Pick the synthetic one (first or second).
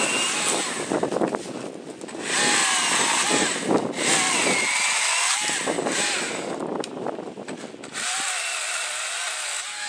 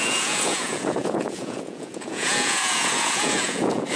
second